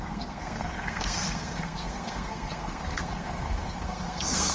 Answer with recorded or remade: remade